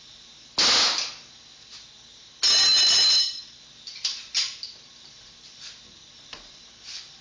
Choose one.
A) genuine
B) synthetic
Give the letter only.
A